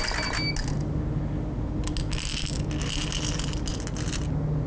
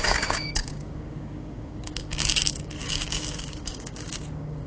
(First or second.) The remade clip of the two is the second